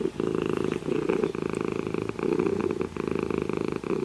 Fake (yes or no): no